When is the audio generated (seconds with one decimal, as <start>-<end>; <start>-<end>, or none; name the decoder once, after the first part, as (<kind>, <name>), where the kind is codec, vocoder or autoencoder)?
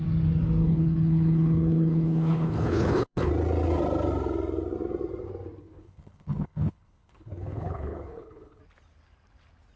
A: 0.6-3.3 (codec, HILCodec); 5.6-8.6